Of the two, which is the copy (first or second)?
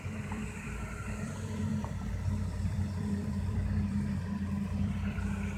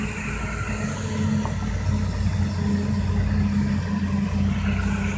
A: first